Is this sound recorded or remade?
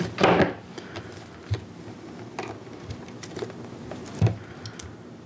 recorded